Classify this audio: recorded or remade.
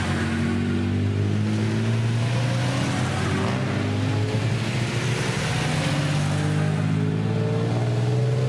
recorded